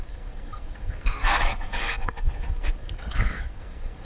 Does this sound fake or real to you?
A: fake